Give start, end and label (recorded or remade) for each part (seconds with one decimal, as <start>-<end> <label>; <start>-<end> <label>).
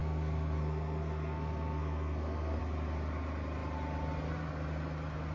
0.0-2.6 remade; 2.6-5.3 recorded